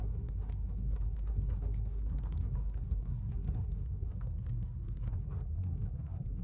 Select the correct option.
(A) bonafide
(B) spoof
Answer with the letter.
B